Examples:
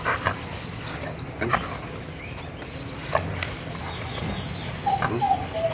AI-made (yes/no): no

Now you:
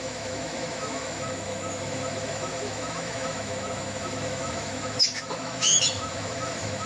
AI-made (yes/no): yes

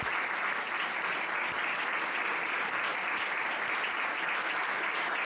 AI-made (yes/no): no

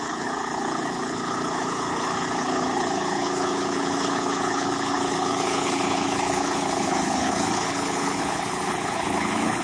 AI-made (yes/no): yes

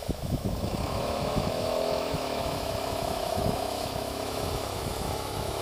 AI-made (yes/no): yes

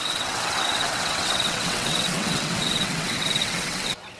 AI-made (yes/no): yes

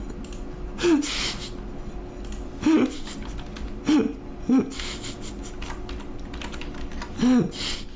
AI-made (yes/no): no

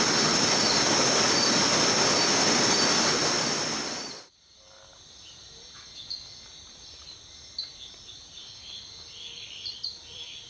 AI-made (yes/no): no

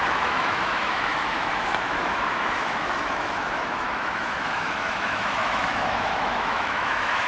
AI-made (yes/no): yes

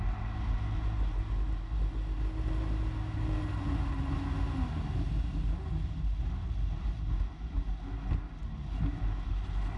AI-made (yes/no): no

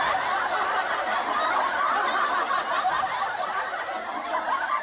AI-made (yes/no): no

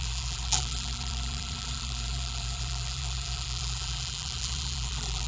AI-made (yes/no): yes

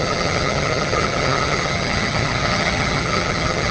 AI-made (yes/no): yes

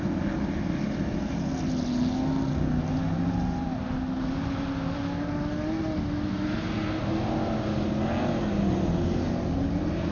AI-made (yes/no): no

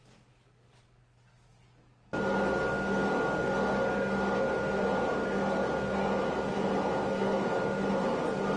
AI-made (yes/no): no